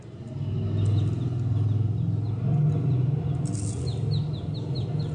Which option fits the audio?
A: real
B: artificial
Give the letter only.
A